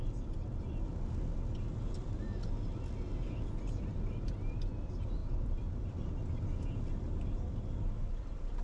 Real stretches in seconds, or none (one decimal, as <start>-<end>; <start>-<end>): 0.0-5.2; 5.9-8.6

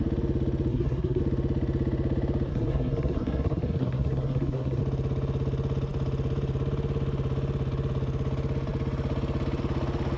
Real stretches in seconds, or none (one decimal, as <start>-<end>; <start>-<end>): 0.0-0.7; 1.2-2.5; 4.8-10.2

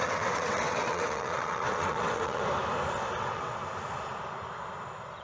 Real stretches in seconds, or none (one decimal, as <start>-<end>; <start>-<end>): 2.4-3.2; 3.6-5.2

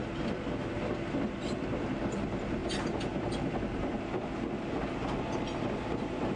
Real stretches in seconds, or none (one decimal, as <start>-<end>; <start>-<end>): 0.0-6.4

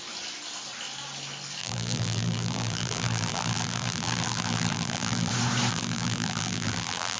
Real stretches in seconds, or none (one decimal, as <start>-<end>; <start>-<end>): 0.0-1.6; 5.3-5.7

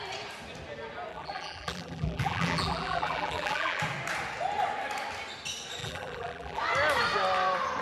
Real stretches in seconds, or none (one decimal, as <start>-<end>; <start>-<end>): 0.0-1.1; 3.8-5.8; 6.6-7.8